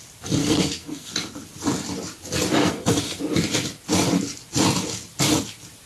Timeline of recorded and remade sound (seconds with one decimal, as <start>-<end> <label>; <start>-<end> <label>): 0.0-0.4 recorded; 0.4-1.1 remade; 1.1-2.6 recorded; 2.6-3.2 remade; 3.2-5.9 recorded